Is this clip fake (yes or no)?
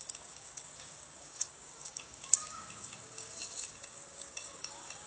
yes